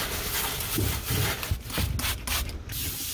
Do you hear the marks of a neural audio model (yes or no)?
no